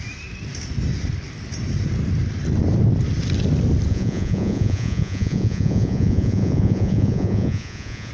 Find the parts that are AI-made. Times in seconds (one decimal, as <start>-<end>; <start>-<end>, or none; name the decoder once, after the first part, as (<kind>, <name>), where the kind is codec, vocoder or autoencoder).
3.9-8.1 (vocoder, Vocos)